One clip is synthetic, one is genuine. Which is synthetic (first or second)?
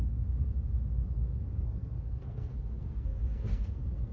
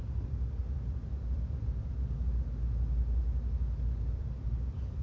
first